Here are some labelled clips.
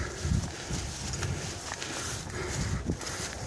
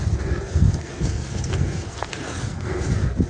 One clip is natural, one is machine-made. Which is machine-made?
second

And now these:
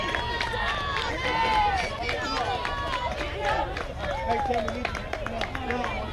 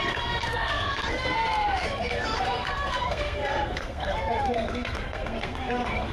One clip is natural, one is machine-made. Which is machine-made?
second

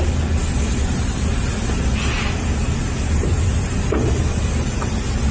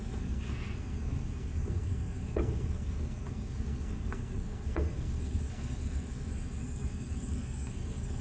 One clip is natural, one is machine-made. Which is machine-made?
second